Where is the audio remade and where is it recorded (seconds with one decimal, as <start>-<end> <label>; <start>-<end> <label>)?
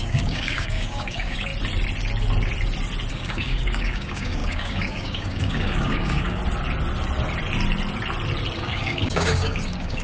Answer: 0.0-1.5 remade; 1.5-3.1 recorded; 3.1-6.4 remade; 6.4-8.6 recorded; 8.6-10.0 remade